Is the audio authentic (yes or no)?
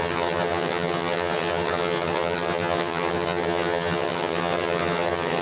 no